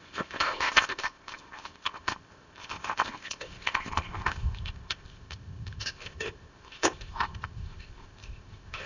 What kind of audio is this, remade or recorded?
remade